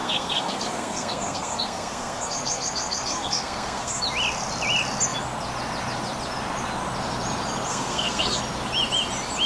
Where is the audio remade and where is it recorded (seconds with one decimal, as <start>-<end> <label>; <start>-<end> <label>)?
0.0-4.0 remade; 4.0-7.7 recorded; 7.7-8.4 remade; 8.4-9.5 recorded